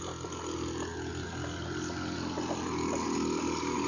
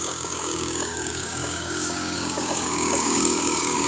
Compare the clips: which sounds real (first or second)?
first